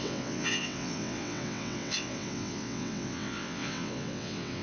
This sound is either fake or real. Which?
fake